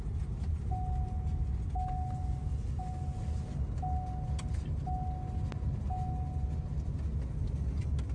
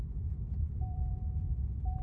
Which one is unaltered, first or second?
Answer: first